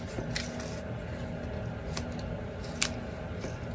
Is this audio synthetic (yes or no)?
no